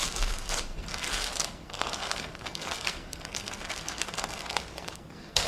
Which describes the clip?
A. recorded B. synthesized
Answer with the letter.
B